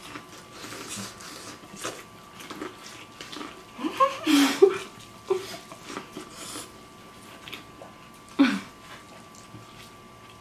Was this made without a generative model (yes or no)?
yes